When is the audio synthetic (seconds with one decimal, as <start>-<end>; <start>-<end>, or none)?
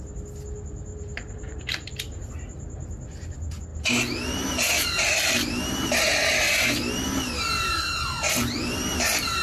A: 0.9-2.3